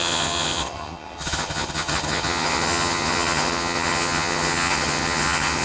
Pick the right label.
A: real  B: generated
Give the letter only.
B